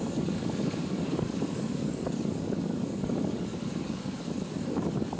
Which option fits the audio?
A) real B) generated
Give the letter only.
B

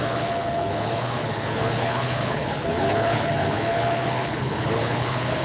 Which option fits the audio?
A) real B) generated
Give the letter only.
B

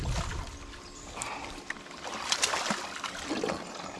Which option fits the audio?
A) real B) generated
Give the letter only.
A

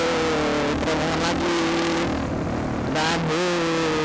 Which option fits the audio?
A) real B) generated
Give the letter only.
A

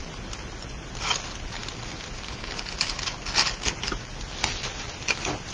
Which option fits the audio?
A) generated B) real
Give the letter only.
B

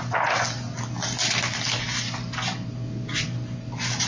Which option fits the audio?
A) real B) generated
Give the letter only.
A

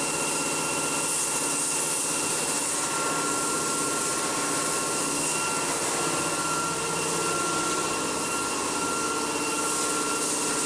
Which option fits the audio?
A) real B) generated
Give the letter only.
A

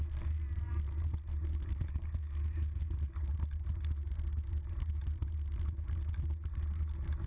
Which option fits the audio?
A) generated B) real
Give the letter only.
B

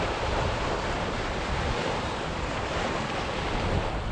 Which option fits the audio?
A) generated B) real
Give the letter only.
B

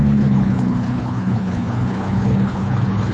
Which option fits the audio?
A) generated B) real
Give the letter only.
A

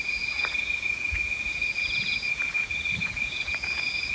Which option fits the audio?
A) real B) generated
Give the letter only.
B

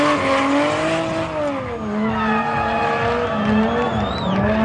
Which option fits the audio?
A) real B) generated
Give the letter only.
A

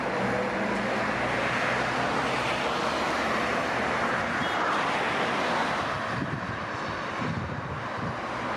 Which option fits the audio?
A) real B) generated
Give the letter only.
A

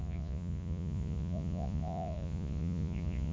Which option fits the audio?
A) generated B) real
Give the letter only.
A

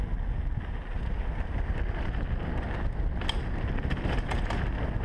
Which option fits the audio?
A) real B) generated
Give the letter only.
A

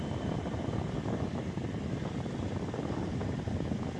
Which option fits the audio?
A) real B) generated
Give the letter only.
A